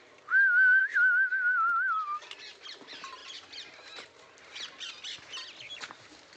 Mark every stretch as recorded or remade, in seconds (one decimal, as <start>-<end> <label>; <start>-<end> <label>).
0.0-6.4 recorded